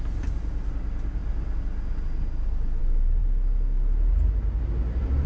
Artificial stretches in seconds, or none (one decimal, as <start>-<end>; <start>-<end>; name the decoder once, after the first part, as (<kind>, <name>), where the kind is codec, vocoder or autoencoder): none